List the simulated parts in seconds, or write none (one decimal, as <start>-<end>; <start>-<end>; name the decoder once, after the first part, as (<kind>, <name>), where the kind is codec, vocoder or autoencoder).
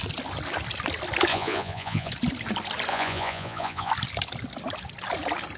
1.3-2.1 (vocoder, Vocos); 2.9-3.9